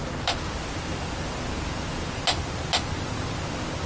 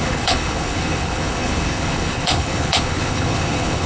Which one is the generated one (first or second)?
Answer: second